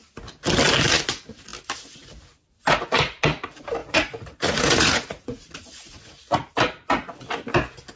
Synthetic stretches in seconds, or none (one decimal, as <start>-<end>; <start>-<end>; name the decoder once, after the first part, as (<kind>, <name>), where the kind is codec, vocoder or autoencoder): 3.8-6.5 (vocoder, Vocos)